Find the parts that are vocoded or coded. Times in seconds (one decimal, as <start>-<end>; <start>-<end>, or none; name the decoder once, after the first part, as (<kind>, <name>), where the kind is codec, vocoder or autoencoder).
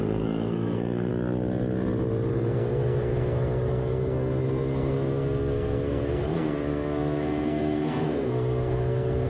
0.0-1.1 (codec, SNAC); 2.3-9.3